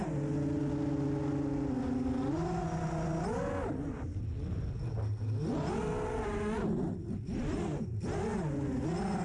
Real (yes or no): yes